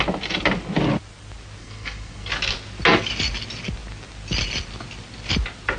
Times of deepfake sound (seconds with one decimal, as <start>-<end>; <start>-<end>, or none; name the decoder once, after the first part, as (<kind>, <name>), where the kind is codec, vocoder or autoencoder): 1.6-2.3 (codec, SNAC)